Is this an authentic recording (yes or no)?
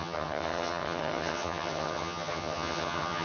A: no